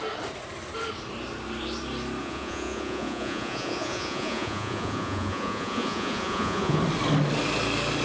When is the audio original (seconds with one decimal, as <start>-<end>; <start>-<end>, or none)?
0.0-2.2; 6.8-8.0